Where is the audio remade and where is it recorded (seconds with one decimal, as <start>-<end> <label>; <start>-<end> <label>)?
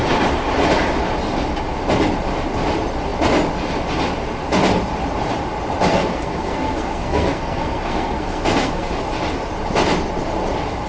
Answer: 0.0-5.9 recorded; 5.9-8.9 remade; 8.9-10.9 recorded